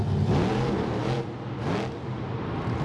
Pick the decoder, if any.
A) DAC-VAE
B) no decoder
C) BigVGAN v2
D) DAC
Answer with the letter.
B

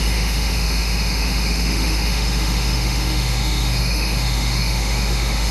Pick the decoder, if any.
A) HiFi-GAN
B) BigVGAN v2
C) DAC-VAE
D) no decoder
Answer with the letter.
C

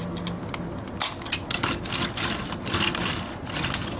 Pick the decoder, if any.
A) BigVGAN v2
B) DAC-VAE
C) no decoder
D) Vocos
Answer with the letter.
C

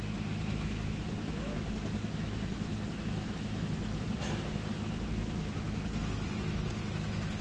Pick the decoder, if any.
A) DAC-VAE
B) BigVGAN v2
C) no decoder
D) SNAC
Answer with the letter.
A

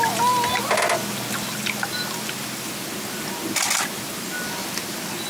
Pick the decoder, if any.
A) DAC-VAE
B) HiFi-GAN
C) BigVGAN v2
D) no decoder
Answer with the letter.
D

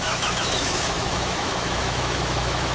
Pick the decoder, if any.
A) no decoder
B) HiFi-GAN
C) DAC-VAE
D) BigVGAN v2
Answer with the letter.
C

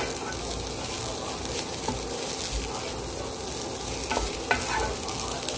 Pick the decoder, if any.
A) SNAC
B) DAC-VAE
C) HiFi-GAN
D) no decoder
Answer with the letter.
D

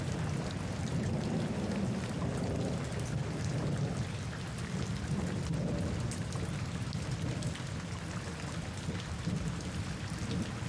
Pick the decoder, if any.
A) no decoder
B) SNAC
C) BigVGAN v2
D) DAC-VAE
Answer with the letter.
A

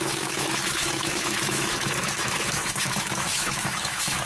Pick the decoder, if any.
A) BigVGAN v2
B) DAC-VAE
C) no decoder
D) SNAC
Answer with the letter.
B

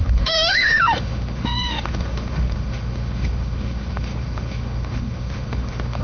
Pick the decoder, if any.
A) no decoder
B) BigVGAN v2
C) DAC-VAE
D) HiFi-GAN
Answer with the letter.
C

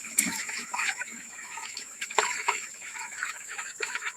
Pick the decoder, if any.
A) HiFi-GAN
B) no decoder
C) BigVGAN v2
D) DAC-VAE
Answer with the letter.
D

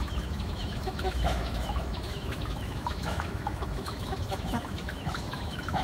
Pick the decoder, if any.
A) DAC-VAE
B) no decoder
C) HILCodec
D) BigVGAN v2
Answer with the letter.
A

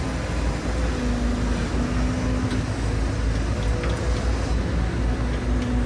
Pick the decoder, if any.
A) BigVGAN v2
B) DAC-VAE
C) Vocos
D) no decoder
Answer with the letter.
D